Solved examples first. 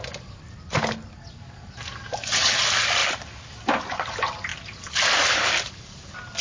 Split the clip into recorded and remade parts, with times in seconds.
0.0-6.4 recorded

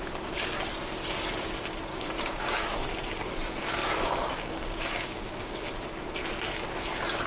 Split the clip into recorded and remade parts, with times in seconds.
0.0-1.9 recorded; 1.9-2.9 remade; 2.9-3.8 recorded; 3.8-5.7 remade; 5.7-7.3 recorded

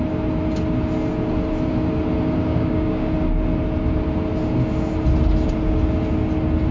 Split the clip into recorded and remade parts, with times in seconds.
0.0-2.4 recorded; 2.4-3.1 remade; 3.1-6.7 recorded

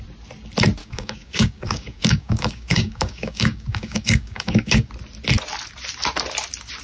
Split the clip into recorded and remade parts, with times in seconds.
0.0-0.8 recorded; 0.8-4.9 remade; 4.9-6.8 recorded

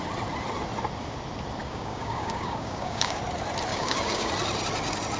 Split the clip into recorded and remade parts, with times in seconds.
0.0-1.6 recorded; 1.6-3.2 remade; 3.2-3.7 recorded; 3.7-4.3 remade; 4.3-5.2 recorded

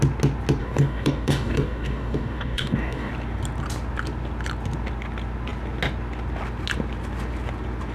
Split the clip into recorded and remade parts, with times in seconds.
0.0-0.6 recorded; 0.6-3.1 remade; 3.1-7.9 recorded

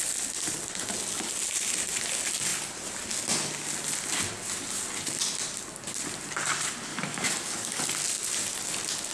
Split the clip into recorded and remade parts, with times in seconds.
0.0-6.9 recorded; 6.9-7.8 remade; 7.8-9.1 recorded

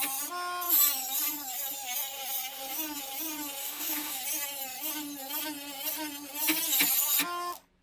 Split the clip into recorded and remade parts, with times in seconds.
0.0-3.6 recorded; 3.6-4.2 remade; 4.2-7.8 recorded